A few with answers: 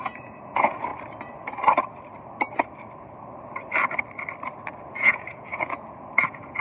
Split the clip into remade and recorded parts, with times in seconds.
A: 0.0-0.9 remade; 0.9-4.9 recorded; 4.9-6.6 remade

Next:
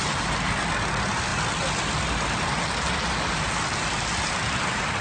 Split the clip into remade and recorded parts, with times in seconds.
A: 0.0-5.0 recorded

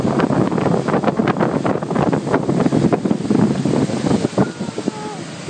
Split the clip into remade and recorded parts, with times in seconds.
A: 0.0-5.5 recorded

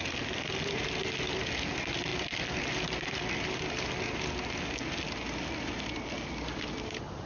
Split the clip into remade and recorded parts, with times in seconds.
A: 0.0-7.3 recorded

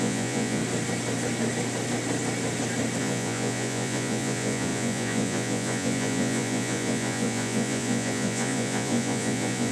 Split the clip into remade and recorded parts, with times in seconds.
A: 0.0-0.6 remade; 0.6-3.0 recorded; 3.0-9.7 remade

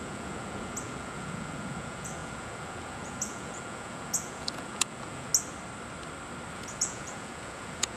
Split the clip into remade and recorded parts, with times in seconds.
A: 0.0-5.3 remade; 5.3-6.5 recorded; 6.5-8.0 remade

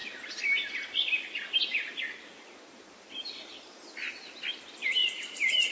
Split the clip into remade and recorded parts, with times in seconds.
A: 0.0-5.7 recorded

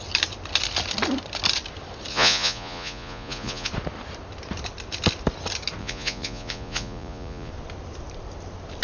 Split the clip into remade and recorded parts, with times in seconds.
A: 0.0-2.1 recorded; 2.1-3.7 remade; 3.7-5.8 recorded; 5.8-7.5 remade; 7.5-8.8 recorded